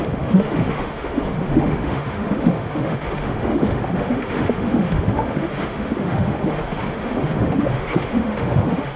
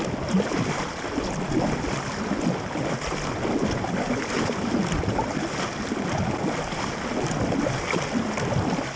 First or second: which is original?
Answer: second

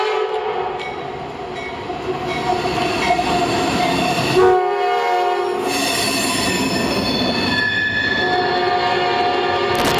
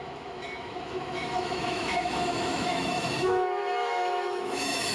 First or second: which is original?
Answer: first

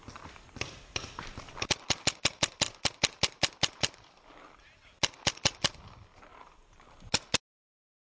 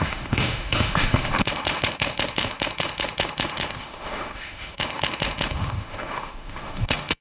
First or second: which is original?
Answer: first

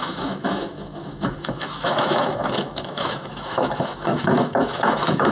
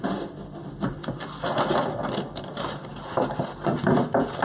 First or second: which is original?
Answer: second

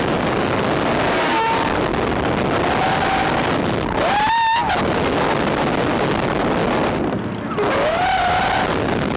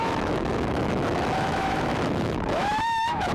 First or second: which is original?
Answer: first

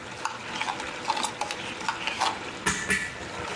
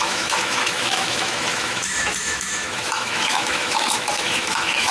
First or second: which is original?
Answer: first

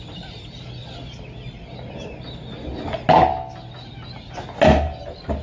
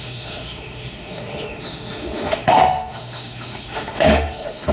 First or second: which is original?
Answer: first